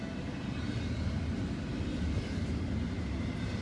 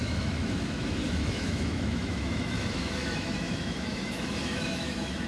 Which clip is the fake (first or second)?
second